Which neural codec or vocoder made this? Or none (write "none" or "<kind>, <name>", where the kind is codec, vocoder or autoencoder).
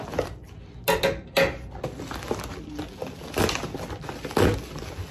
none